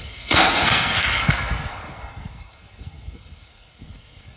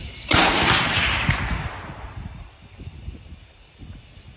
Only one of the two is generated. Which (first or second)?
first